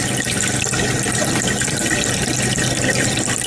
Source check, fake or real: real